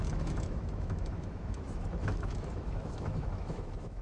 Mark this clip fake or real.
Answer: fake